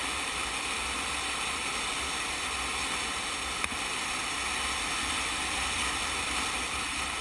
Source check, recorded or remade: recorded